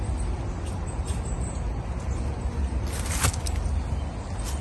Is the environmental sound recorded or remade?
recorded